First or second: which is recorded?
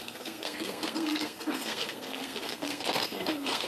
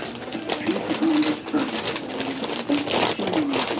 second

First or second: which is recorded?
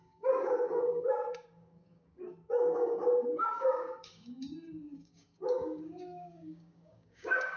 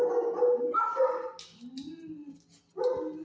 second